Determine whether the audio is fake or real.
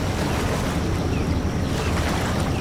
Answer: real